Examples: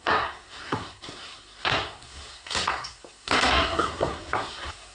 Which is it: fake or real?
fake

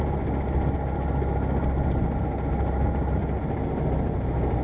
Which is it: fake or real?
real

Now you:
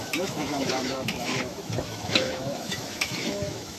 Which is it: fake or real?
fake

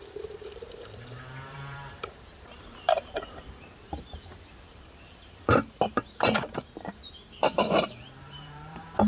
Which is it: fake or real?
fake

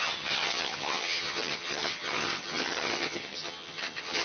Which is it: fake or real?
fake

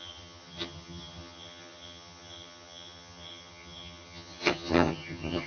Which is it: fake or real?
fake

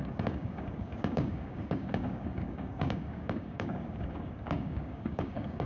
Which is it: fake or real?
fake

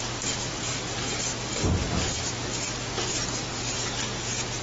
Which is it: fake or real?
real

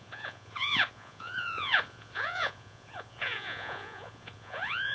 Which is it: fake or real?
fake